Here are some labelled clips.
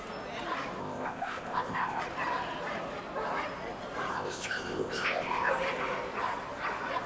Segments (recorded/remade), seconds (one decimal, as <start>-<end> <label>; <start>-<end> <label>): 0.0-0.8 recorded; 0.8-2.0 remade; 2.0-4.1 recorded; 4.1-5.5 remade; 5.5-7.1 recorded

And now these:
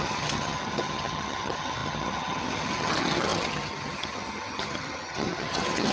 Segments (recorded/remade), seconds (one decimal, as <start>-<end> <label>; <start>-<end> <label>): 0.0-5.9 remade

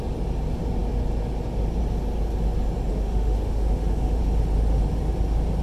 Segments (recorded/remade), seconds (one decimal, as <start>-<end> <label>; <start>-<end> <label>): 0.0-2.9 recorded; 2.9-4.2 remade; 4.2-5.6 recorded

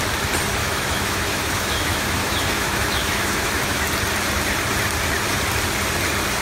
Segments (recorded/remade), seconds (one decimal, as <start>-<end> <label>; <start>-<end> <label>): 0.0-0.6 recorded; 0.6-3.8 remade; 3.8-6.4 recorded